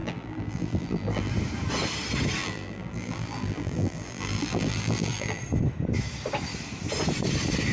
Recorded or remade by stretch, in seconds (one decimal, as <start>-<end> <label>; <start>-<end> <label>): 0.0-1.3 remade; 1.3-2.4 recorded; 2.4-5.4 remade; 5.4-7.7 recorded